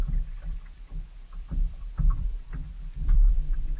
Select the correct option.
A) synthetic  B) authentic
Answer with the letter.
A